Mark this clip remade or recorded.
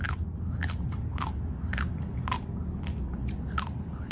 recorded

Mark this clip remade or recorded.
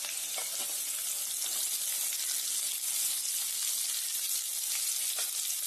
recorded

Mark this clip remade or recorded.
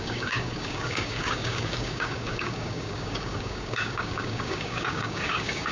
remade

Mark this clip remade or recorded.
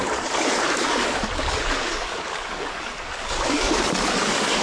remade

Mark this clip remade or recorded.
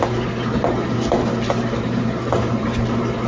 recorded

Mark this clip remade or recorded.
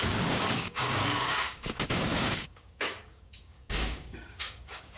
remade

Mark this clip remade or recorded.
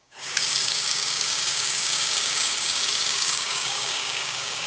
remade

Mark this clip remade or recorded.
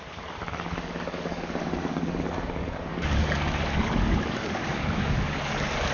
remade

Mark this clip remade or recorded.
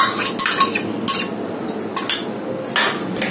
recorded